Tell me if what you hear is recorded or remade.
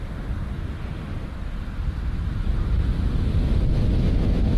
recorded